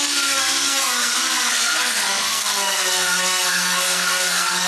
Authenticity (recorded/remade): remade